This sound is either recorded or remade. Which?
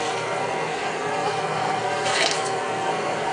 remade